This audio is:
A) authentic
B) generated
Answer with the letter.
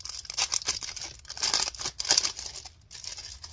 A